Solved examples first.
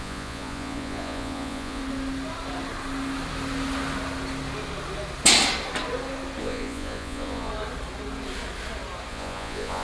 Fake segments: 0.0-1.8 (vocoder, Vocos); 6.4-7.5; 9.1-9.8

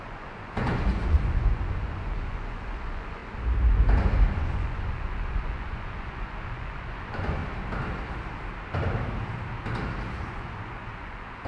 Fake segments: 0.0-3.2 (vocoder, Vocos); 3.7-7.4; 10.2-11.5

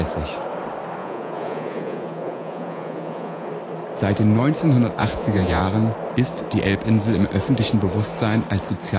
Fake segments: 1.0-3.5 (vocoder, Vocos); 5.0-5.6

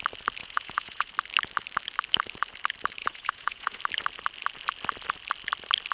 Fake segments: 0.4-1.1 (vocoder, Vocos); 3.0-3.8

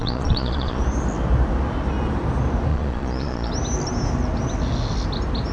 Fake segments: 0.0-0.8 (vocoder, Vocos); 2.7-3.5

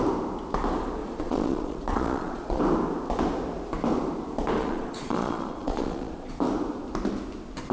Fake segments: 1.0-2.6 (vocoder, Vocos); 4.6-6.3

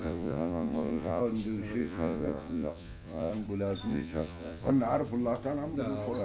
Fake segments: 0.0-1.2 (vocoder, Vocos); 1.8-3.3; 3.9-4.7

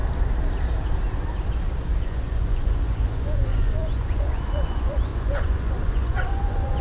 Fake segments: 2.0-6.8 (vocoder, Vocos)